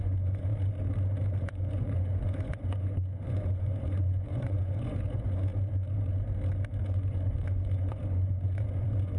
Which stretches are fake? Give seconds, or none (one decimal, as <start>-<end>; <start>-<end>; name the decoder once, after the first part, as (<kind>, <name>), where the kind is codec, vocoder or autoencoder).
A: 0.0-0.5 (vocoder, Vocos); 1.4-5.5; 6.8-9.2